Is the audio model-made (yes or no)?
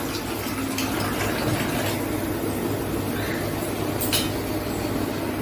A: no